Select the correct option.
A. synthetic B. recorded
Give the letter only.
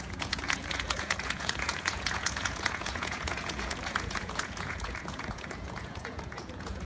A